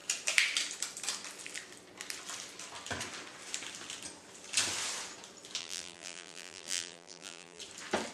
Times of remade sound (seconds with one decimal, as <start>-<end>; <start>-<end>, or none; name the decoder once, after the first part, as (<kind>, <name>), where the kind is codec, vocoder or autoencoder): 5.6-7.6 (vocoder, BigVGAN v2)